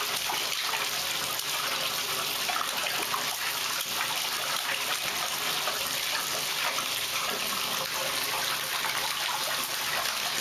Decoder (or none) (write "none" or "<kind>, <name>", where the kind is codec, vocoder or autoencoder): none